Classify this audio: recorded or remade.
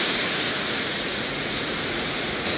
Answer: remade